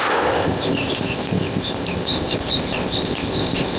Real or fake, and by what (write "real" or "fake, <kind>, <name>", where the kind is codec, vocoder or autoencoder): fake, codec, ZipCodec